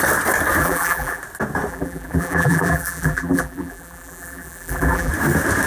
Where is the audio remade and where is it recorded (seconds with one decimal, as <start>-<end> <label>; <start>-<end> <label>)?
0.0-0.6 recorded; 0.6-1.2 remade; 1.2-1.7 recorded; 1.7-5.1 remade; 5.1-5.7 recorded